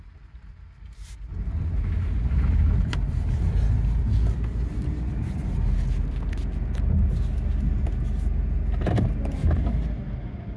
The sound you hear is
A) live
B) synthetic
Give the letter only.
A